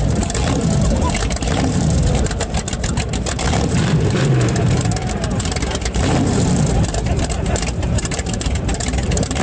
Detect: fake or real fake